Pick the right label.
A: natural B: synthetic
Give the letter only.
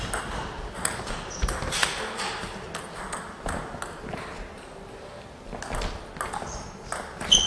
A